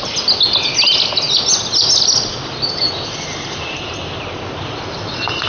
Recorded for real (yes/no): yes